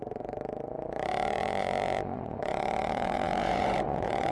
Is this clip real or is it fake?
fake